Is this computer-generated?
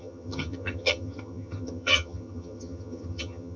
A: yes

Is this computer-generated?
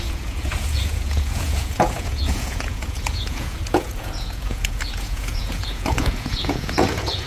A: yes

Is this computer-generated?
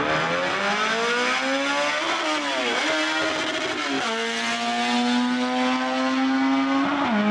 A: no